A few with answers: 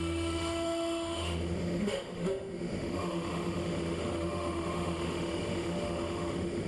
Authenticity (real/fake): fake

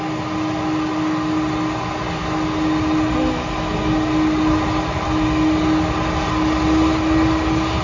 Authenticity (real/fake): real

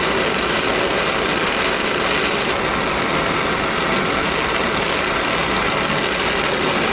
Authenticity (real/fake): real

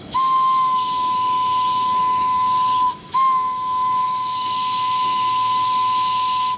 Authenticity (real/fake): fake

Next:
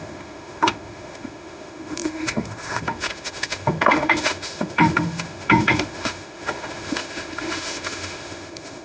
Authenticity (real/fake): fake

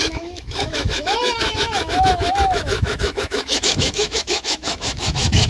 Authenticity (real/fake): fake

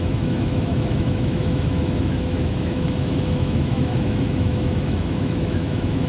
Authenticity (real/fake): fake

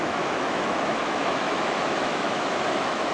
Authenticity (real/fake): fake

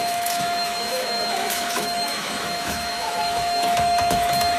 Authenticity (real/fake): fake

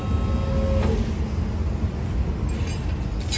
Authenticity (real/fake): real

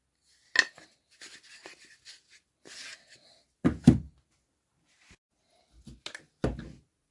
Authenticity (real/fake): real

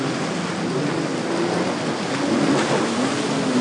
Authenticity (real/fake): real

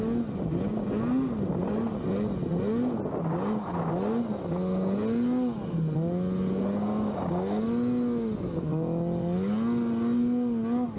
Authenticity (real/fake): real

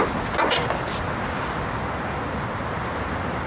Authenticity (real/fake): real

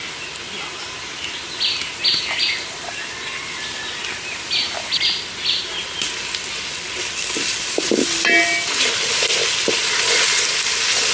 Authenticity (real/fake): real